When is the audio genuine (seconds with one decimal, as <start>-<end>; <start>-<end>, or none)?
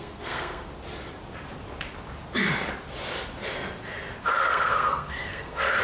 0.7-4.2